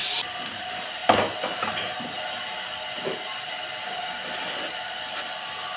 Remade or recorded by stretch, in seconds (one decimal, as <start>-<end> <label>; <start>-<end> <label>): 0.0-5.8 recorded